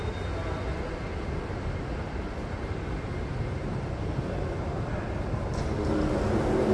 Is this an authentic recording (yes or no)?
yes